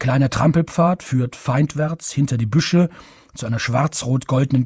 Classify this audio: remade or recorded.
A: remade